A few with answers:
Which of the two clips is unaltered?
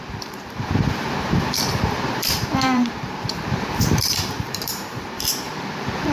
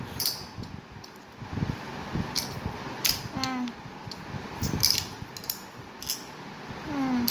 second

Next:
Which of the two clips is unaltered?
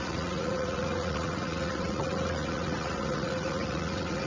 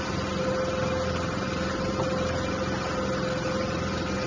second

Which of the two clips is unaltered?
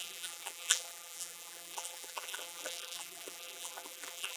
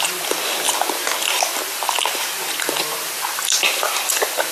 second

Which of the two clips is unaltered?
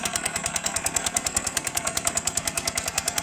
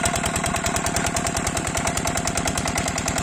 second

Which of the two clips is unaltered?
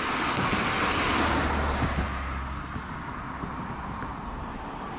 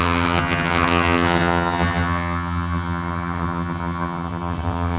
first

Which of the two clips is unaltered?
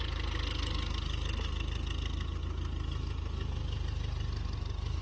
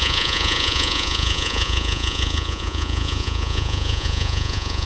first